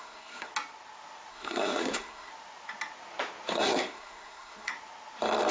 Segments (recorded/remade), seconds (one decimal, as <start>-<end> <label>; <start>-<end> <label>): 0.0-0.5 remade; 0.5-1.3 recorded; 1.3-2.3 remade; 2.3-3.5 recorded; 3.5-4.7 remade; 4.7-5.5 recorded